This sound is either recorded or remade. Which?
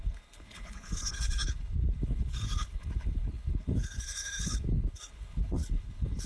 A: remade